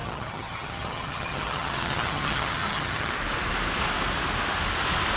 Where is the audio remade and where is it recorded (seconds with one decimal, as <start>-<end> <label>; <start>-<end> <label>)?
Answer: 0.0-3.1 remade; 3.1-5.2 recorded